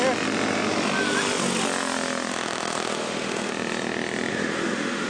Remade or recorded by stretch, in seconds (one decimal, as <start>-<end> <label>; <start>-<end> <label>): 0.0-2.3 recorded; 2.3-3.5 remade; 3.5-4.3 recorded; 4.3-5.1 remade